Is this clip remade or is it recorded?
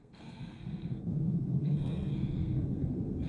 remade